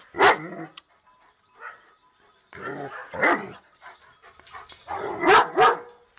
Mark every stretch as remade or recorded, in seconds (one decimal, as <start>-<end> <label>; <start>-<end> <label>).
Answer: 0.0-6.2 recorded